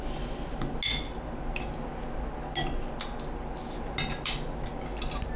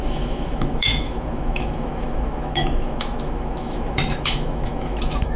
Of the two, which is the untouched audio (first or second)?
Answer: first